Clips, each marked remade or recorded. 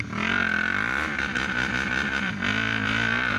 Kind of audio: recorded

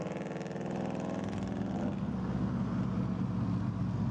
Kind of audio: recorded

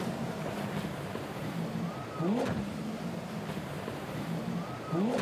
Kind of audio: remade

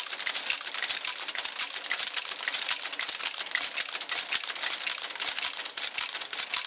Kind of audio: recorded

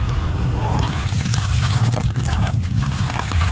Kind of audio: remade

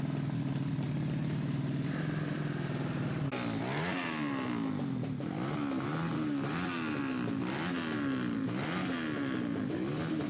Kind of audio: recorded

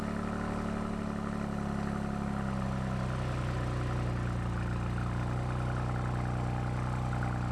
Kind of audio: recorded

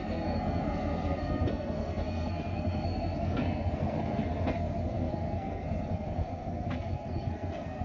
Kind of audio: remade